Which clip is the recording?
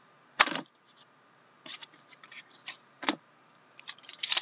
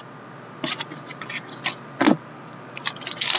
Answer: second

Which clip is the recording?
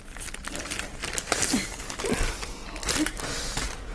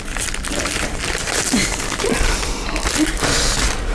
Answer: first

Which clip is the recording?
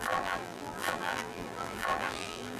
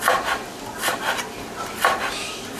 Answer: second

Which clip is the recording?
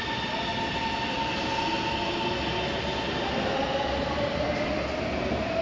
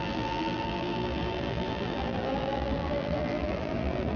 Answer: first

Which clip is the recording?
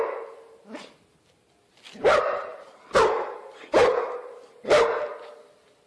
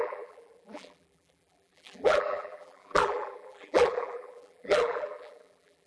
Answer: first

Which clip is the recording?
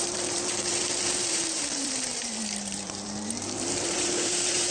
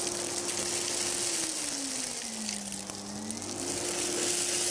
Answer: second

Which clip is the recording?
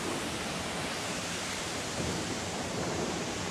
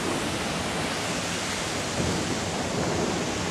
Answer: second